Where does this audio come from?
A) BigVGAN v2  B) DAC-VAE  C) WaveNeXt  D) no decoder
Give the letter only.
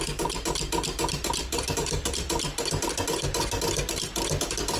D